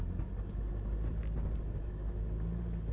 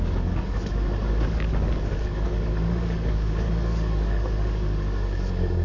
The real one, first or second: first